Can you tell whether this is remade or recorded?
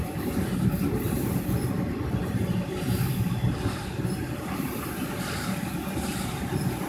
remade